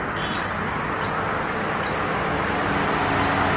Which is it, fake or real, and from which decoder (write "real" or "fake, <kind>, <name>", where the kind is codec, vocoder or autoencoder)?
real